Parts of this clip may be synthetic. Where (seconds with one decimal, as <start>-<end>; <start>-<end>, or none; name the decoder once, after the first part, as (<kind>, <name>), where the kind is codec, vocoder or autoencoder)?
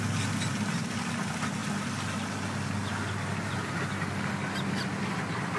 none